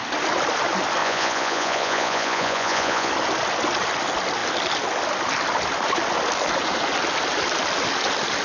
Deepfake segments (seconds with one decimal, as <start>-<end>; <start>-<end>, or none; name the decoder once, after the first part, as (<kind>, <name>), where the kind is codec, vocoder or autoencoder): 1.0-3.1 (vocoder, Vocos)